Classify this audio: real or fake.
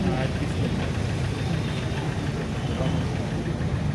real